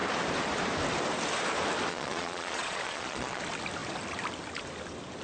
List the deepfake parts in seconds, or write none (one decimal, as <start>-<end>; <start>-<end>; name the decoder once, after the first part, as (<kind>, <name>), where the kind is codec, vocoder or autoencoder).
1.9-3.4 (vocoder, Vocos)